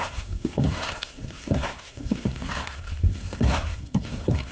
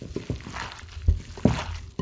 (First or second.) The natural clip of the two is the second